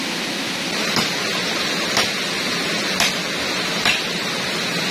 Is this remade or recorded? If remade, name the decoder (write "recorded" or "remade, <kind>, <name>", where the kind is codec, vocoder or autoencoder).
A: recorded